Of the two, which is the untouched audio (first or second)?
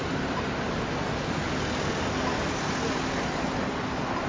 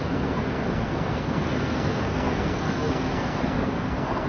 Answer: first